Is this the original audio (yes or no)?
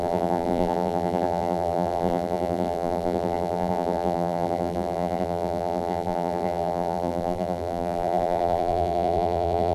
no